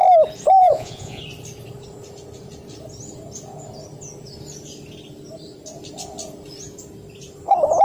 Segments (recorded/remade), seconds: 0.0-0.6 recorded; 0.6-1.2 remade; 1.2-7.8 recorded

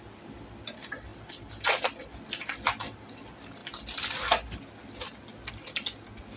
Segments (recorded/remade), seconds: 0.0-6.4 recorded